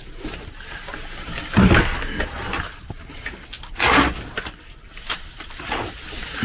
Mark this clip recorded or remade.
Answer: recorded